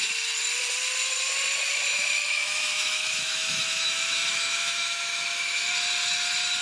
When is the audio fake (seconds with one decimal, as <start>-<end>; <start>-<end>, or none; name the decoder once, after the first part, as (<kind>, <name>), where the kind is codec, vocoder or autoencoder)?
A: 1.9-5.7 (autoencoder, DAC-VAE)